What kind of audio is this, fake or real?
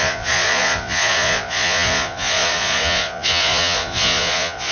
fake